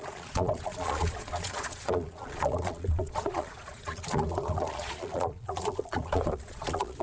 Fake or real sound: fake